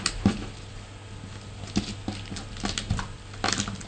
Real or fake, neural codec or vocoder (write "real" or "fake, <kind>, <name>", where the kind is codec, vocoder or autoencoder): real